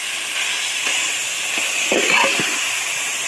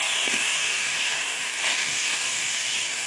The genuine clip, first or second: first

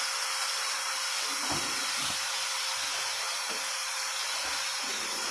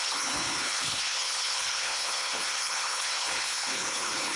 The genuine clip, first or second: first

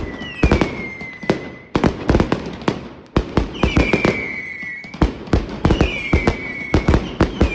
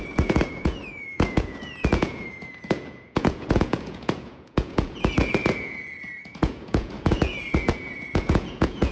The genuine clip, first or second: first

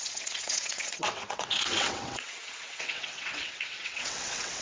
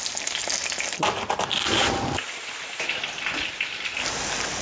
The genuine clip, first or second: second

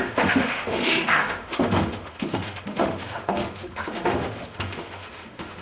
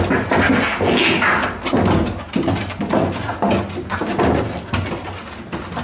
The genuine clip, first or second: second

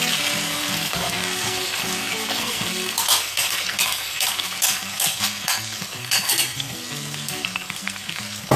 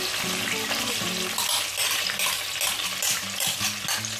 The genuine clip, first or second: second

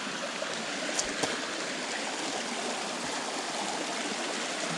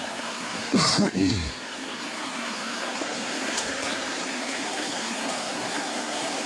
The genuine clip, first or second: first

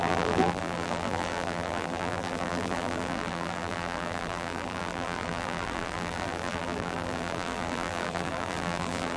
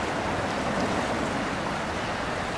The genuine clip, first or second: second